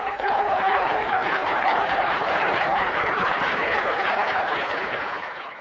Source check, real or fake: fake